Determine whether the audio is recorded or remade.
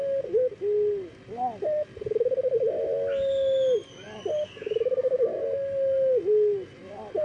recorded